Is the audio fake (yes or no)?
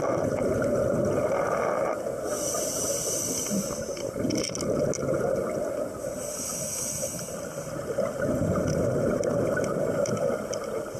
no